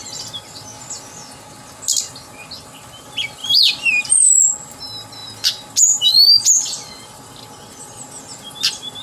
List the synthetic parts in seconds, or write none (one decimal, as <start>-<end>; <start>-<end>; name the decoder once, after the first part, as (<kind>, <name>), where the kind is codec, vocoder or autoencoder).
3.4-4.3 (vocoder, BigVGAN v2)